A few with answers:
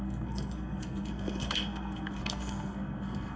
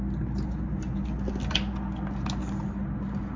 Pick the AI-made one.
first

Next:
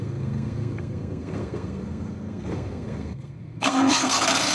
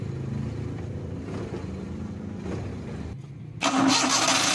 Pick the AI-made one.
first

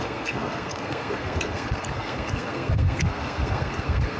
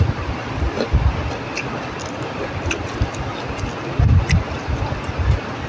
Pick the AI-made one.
first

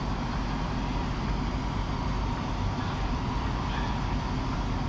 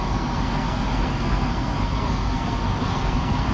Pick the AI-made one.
second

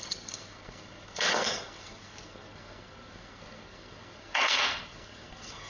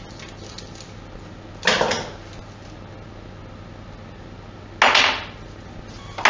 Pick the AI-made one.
first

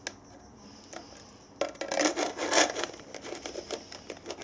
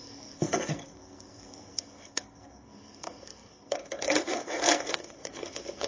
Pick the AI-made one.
second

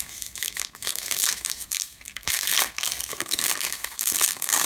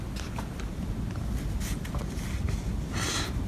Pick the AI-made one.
first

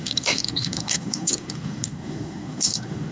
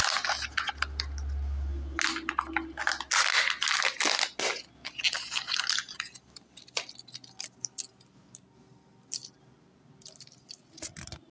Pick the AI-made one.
first